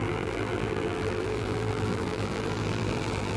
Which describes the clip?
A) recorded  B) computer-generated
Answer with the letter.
B